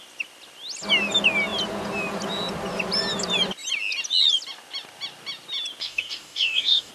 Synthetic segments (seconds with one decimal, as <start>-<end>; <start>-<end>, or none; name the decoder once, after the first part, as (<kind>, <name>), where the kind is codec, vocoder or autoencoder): 5.8-6.9 (codec, DAC)